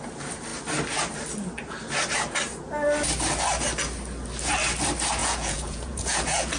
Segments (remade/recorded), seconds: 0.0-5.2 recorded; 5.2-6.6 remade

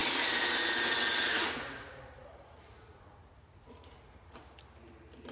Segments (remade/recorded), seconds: 0.0-1.3 recorded; 1.3-4.5 remade; 4.5-5.3 recorded